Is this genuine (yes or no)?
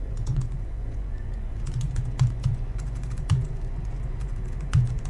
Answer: no